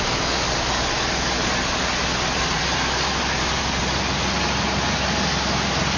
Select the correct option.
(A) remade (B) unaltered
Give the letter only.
B